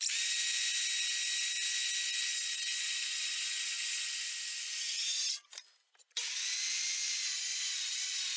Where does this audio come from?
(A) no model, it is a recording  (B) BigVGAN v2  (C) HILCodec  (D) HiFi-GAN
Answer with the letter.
A